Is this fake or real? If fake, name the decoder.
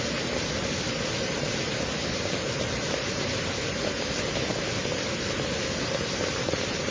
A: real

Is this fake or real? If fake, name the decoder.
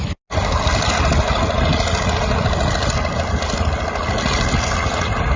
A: real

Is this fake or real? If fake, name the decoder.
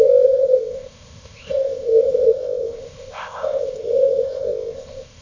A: fake, codec, ZipCodec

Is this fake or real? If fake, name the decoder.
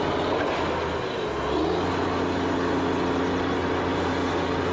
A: real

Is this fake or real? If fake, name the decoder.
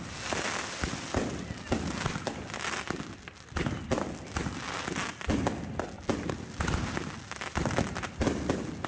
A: real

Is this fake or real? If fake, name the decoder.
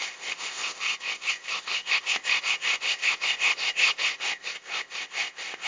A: fake, codec, ZipCodec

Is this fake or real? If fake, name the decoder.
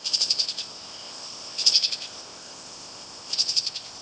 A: fake, codec, ZipCodec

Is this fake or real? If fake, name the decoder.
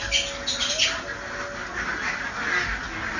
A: real